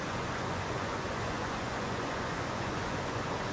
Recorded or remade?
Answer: remade